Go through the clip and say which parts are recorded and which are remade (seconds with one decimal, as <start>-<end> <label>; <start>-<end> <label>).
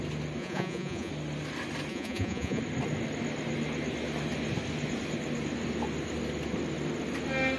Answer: 0.0-0.4 recorded; 0.4-1.1 remade; 1.1-1.9 recorded; 1.9-2.6 remade; 2.6-7.6 recorded